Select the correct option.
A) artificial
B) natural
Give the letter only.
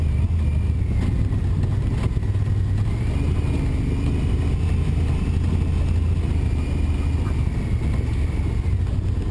B